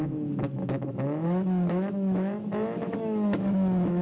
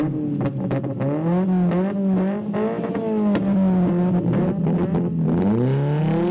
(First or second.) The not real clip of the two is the first